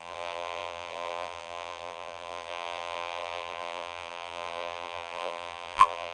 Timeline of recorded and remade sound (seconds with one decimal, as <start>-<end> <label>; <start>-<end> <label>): 0.0-6.1 remade